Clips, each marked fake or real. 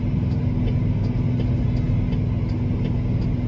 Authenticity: real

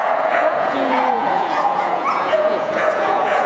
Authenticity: fake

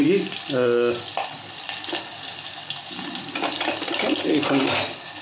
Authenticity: real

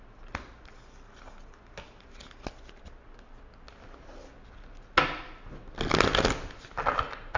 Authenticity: real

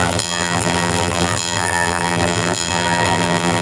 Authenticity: fake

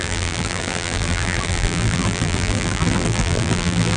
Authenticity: fake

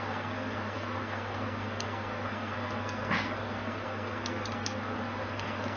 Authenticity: fake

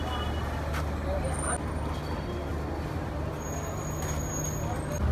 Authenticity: real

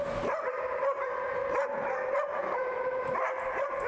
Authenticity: real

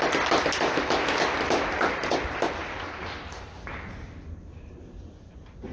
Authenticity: real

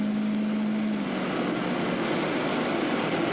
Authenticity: real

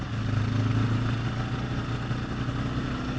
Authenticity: real